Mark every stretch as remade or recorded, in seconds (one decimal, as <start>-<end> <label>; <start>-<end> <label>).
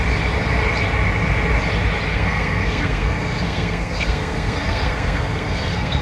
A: 0.0-2.1 recorded; 2.1-6.0 remade